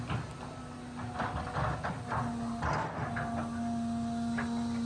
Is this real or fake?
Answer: real